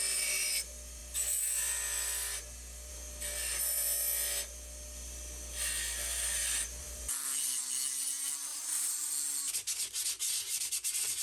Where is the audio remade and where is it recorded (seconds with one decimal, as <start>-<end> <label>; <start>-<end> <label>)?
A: 0.0-6.8 recorded; 6.8-7.6 remade; 7.6-8.5 recorded; 8.5-9.1 remade; 9.1-11.2 recorded